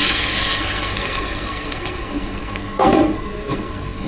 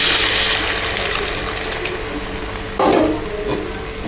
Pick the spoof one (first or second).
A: first